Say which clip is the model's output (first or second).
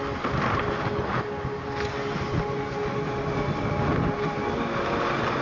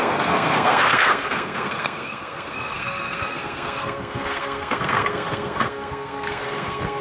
second